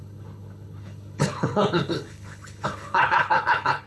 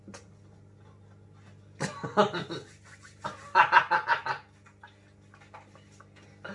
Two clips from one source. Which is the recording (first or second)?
second